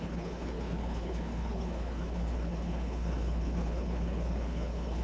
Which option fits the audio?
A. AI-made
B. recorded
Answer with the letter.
A